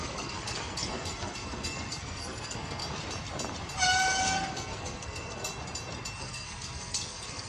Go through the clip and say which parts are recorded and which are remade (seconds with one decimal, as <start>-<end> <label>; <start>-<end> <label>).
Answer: 0.0-2.8 remade; 2.8-4.2 recorded; 4.2-5.5 remade; 5.5-6.2 recorded; 6.2-7.5 remade